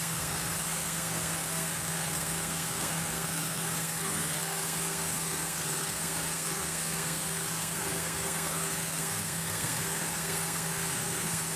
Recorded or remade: remade